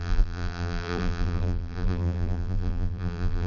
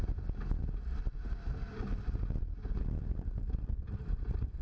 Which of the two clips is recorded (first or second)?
second